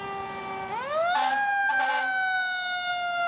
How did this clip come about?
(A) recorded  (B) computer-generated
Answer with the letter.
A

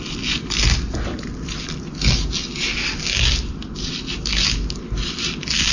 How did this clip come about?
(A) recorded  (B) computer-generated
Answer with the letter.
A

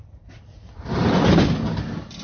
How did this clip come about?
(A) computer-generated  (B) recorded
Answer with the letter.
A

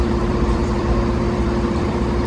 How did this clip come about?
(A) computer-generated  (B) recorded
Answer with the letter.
A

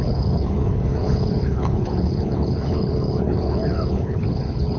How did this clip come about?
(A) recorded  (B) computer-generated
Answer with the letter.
B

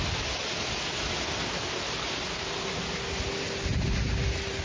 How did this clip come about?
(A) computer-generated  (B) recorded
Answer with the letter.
B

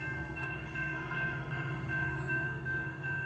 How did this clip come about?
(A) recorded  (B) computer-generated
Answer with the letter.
B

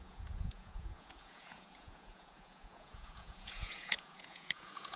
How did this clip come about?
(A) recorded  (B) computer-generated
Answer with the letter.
B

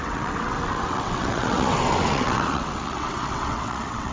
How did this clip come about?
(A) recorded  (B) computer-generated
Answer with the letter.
B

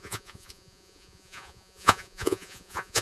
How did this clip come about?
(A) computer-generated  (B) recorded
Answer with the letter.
A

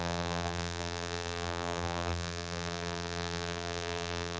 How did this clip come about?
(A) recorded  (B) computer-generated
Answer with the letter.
B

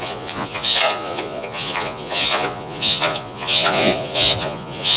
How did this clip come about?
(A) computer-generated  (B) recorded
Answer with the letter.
A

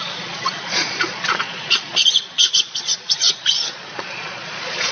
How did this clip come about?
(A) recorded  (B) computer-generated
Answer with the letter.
B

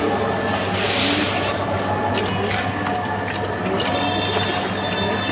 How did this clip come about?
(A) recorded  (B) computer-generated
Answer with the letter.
A